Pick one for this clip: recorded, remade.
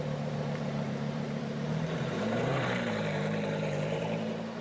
remade